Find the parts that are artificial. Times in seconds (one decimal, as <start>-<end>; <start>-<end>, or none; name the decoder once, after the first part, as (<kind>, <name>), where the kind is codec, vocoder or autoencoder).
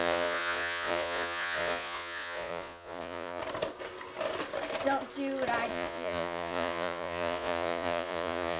0.0-3.4 (vocoder, Vocos); 5.7-8.6